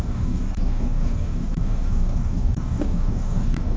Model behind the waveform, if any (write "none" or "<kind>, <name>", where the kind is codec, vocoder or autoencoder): codec, DAC